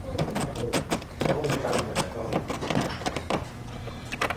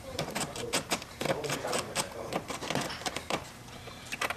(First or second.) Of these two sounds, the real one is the first